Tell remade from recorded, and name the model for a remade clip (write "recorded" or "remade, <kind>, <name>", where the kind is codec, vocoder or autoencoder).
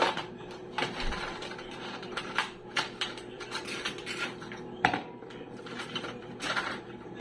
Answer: remade, vocoder, BigVGAN v2